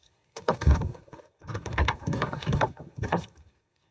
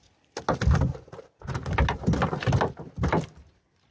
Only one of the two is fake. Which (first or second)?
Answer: first